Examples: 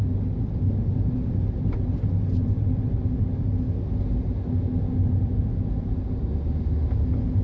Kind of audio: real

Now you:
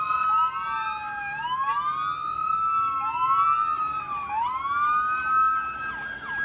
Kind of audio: real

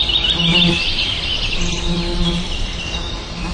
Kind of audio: real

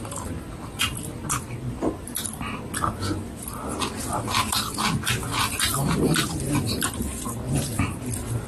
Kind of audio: real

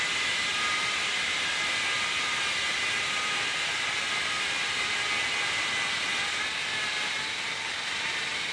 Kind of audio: real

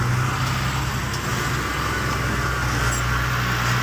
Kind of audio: real